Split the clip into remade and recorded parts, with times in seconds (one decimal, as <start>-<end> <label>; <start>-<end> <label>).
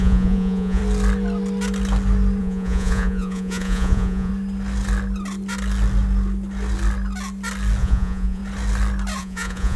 0.0-0.8 remade; 0.8-2.4 recorded; 2.4-4.3 remade; 4.3-7.8 recorded; 7.8-8.4 remade; 8.4-9.2 recorded; 9.2-9.8 remade